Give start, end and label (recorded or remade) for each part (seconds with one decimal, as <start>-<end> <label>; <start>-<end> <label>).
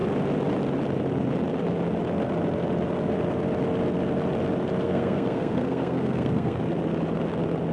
0.0-4.8 recorded; 4.8-6.6 remade; 6.6-7.7 recorded